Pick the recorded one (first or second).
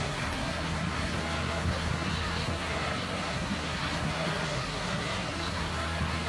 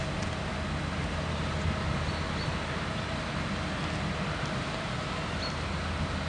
second